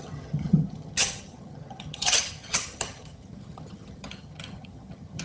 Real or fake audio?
fake